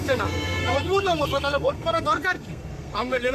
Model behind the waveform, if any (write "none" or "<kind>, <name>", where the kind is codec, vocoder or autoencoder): codec, SNAC